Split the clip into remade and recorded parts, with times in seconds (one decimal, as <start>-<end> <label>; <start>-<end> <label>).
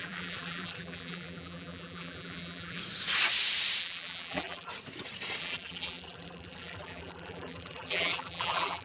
0.0-2.8 remade; 2.8-3.8 recorded; 3.8-4.7 remade; 4.7-5.4 recorded; 5.4-8.8 remade